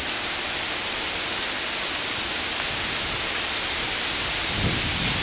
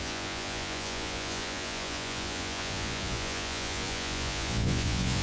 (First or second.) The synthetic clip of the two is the second